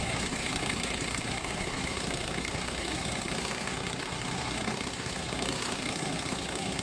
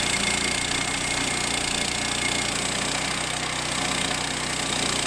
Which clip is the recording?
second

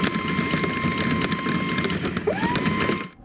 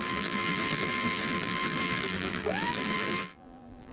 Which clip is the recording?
first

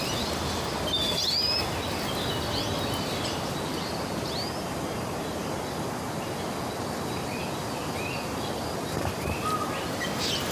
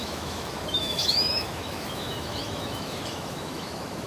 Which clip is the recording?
first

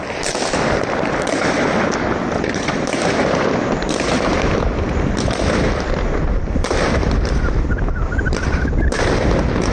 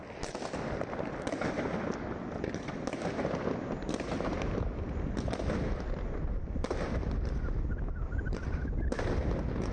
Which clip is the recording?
second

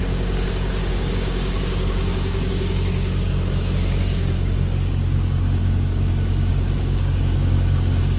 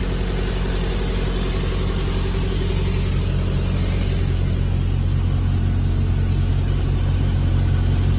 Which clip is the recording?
second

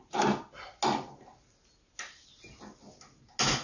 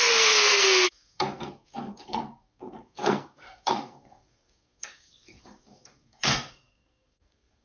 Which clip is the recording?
first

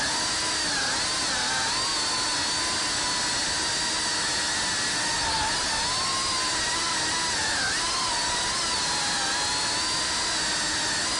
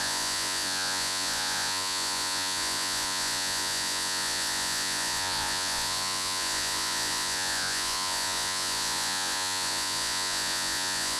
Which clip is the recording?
first